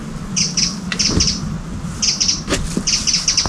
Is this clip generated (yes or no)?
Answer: no